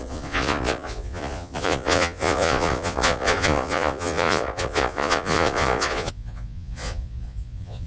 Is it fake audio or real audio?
fake